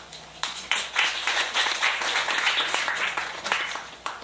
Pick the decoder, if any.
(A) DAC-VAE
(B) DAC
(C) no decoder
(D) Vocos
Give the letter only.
D